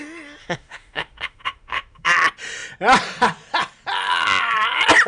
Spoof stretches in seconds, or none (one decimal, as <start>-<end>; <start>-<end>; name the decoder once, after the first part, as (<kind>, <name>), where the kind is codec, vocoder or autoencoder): 0.4-2.1 (autoencoder, DAC-VAE)